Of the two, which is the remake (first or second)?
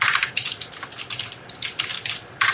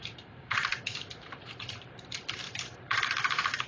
second